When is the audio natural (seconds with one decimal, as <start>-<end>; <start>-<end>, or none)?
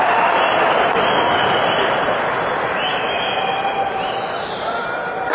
0.0-2.9; 3.4-5.3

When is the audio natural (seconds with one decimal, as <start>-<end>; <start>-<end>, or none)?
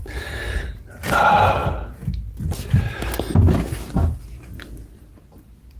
0.0-5.8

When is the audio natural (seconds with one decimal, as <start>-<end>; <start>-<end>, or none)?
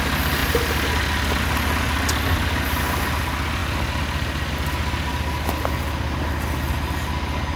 0.0-7.6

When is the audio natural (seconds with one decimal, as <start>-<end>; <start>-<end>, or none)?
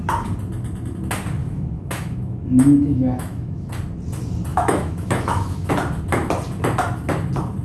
0.0-1.4; 3.7-4.5; 5.7-7.6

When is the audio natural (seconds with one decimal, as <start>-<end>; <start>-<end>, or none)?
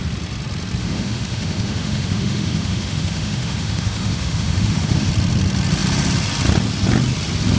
0.0-0.8; 5.1-7.6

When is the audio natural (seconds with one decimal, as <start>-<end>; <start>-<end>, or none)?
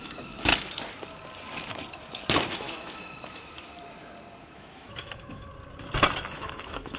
0.5-2.5; 3.7-4.4; 5.5-6.3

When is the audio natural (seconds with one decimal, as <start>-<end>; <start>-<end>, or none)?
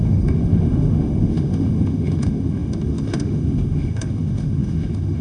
none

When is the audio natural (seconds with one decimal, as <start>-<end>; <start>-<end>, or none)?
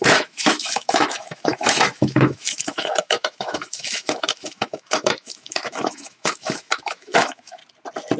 7.6-8.2